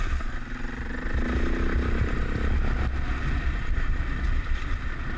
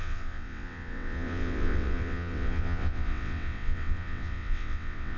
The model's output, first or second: second